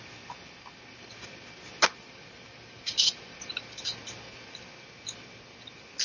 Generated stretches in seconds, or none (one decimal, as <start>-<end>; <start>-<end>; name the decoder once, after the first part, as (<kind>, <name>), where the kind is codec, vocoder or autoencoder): 1.9-3.5 (vocoder, BigVGAN v2)

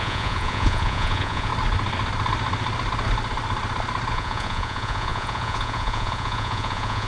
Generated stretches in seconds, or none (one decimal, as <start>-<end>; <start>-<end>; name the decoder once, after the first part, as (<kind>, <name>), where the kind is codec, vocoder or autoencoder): 0.0-1.5 (vocoder, Vocos); 4.1-7.1

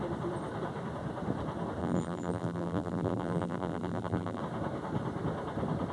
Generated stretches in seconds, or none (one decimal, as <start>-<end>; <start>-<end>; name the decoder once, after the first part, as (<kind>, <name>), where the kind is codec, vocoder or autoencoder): 1.8-4.4 (vocoder, BigVGAN v2)

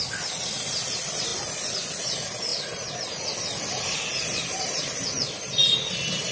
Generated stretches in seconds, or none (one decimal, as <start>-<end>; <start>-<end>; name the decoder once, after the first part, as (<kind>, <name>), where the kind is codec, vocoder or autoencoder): none

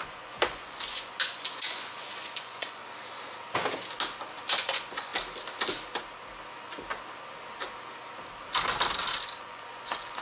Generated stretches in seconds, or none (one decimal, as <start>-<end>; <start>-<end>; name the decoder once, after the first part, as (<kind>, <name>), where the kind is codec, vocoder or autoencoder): 0.0-2.8 (vocoder, Vocos); 4.6-5.1; 9.4-10.2